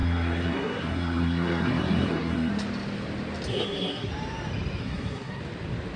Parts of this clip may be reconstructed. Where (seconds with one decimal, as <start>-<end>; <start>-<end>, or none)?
0.0-2.5; 3.5-4.1; 4.8-5.4